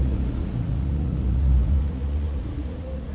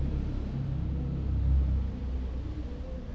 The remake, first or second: first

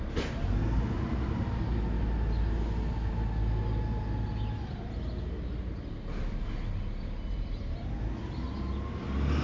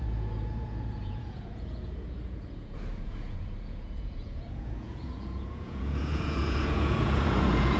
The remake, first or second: second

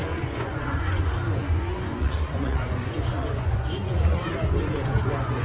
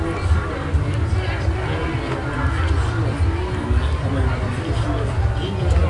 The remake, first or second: first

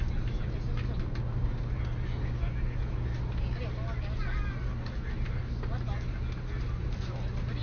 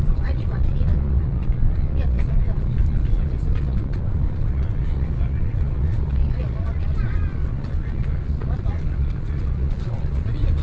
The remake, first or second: second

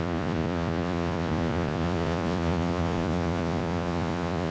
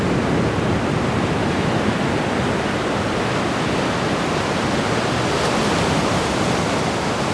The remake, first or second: first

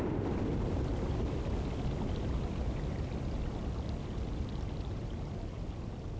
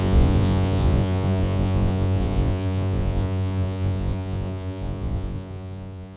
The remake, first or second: second